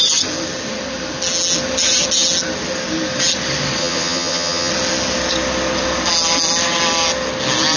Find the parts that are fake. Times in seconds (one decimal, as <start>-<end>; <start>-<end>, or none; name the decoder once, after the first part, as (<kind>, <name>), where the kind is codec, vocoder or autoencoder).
3.8-4.7 (vocoder, HiFi-GAN)